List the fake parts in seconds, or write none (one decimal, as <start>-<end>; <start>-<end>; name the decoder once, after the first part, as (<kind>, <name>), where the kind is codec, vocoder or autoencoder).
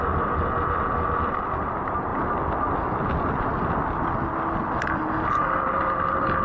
none